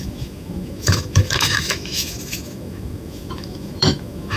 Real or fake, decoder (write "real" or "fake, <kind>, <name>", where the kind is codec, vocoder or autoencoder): fake, autoencoder, DAC-VAE